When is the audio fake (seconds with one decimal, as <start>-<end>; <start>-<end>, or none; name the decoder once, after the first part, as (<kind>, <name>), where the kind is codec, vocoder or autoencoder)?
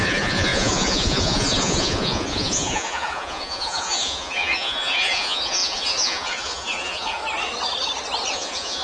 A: 0.0-7.2 (vocoder, Vocos); 8.3-8.8